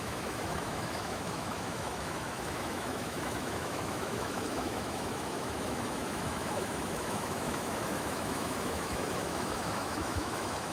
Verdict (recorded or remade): remade